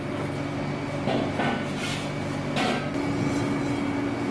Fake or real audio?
real